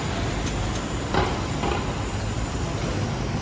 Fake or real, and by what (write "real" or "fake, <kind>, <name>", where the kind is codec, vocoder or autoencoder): real